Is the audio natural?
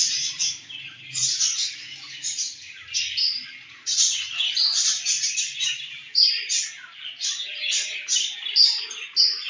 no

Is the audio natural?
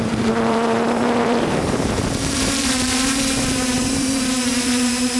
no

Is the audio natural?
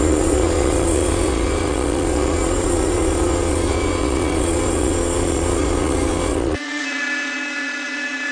no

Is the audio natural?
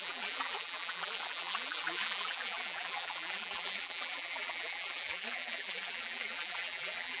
no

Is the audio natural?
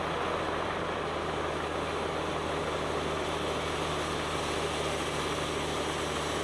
yes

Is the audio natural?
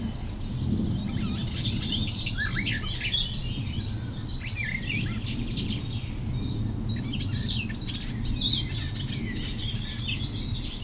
yes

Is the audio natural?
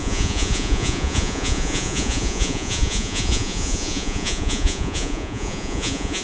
no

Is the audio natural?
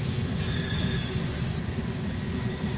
no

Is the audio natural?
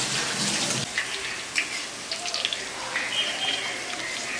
yes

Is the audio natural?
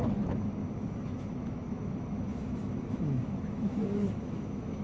no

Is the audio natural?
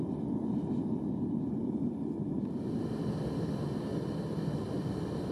no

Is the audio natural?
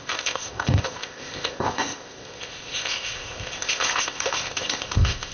no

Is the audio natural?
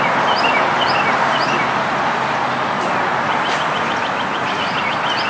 yes